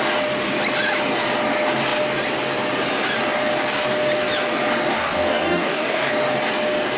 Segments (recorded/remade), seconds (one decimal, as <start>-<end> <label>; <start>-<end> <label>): 0.0-4.9 recorded; 4.9-6.1 remade; 6.1-7.0 recorded

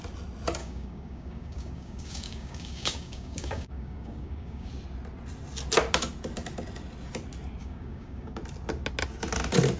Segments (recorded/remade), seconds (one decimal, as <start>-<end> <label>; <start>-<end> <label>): 0.0-0.6 recorded; 0.6-4.7 remade; 4.7-7.6 recorded; 7.6-8.4 remade; 8.4-9.8 recorded

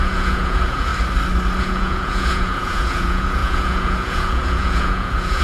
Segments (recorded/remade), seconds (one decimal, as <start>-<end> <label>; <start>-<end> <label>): 0.0-0.9 remade; 0.9-1.6 recorded; 1.6-5.4 remade

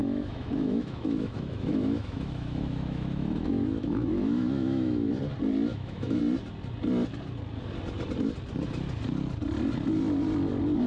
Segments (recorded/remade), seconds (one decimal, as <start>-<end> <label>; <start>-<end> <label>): 0.0-5.1 remade; 5.1-5.7 recorded; 5.7-6.2 remade; 6.2-10.9 recorded

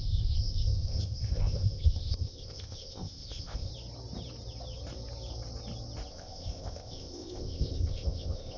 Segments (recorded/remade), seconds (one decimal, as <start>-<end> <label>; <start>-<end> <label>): 0.0-3.7 remade; 3.7-6.1 recorded; 6.1-8.6 remade

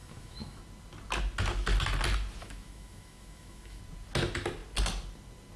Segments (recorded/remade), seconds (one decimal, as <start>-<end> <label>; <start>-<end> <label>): 0.0-0.6 remade; 0.6-2.4 recorded; 2.4-3.8 remade; 3.8-5.6 recorded

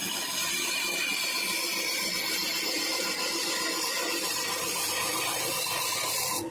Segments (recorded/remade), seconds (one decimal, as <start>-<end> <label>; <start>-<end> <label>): 0.0-6.5 recorded